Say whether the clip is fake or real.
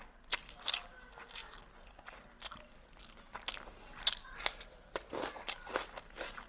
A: real